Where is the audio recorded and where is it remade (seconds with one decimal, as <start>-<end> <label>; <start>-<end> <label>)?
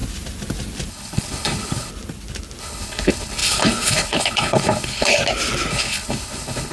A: 0.0-0.9 recorded; 0.9-1.9 remade; 1.9-2.6 recorded; 2.6-5.2 remade; 5.2-5.7 recorded; 5.7-6.7 remade